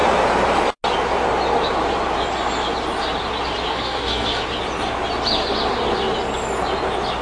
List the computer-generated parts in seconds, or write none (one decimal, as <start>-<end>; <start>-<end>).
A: 3.7-4.4